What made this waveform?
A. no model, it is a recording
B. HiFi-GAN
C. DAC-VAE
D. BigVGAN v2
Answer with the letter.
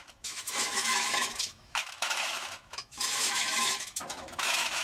C